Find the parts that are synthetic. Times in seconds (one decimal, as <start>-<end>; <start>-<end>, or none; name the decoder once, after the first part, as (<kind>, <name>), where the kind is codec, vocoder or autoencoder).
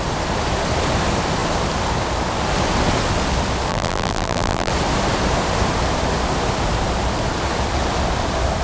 3.7-4.7 (vocoder, BigVGAN v2)